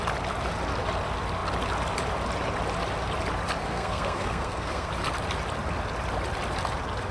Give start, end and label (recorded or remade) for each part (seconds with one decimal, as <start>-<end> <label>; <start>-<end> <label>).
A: 0.0-3.6 recorded; 3.6-4.9 remade; 4.9-7.1 recorded